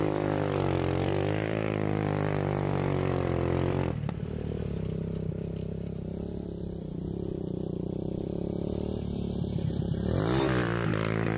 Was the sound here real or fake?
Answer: fake